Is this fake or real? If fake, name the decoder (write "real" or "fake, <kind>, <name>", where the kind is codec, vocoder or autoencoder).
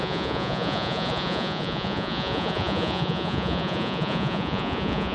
fake, vocoder, Vocos